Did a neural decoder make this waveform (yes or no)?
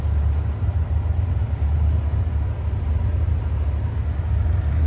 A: no